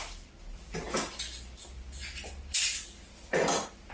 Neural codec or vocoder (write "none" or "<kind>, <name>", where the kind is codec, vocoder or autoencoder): none